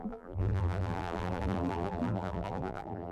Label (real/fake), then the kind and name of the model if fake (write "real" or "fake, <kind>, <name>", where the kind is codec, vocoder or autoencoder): fake, vocoder, BigVGAN v2